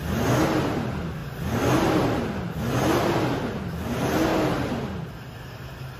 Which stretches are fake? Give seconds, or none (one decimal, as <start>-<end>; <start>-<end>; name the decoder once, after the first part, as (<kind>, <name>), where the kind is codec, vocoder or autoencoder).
none